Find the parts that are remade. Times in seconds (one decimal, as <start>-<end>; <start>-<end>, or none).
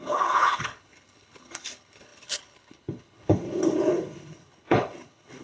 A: 0.0-5.4